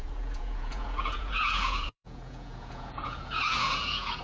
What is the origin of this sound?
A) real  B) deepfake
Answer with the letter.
B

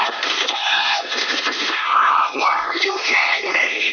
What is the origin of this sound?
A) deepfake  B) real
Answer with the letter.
A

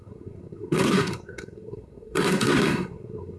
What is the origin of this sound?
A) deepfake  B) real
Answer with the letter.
A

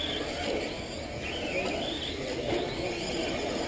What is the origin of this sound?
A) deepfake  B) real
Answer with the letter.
B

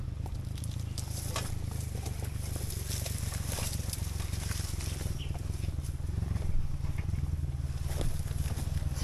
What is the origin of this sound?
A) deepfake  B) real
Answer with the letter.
B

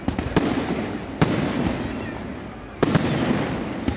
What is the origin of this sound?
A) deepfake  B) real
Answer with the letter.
B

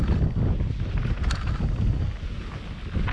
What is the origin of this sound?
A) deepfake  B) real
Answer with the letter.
B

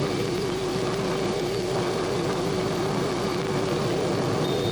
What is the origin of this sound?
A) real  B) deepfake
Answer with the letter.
A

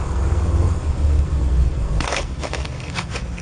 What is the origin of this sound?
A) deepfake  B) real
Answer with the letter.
A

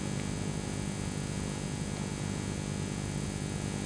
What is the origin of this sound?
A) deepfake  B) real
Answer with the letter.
B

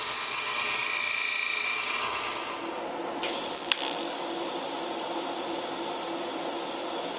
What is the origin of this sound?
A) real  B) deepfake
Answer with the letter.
A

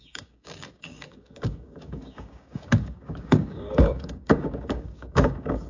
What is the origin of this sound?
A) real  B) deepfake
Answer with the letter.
B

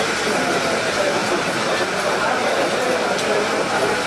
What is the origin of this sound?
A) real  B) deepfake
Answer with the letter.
A